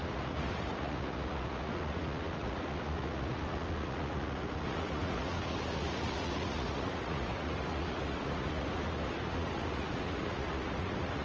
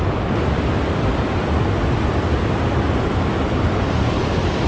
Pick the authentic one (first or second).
second